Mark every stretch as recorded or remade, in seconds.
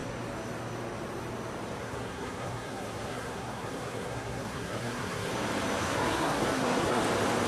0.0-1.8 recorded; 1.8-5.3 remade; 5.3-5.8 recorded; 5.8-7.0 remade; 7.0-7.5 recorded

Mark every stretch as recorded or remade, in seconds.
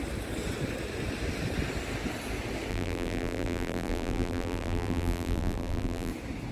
0.0-2.7 recorded; 2.7-6.1 remade; 6.1-6.5 recorded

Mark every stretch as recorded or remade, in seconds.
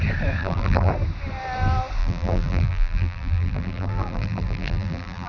0.0-0.4 recorded; 0.4-0.9 remade; 0.9-2.0 recorded; 2.0-5.3 remade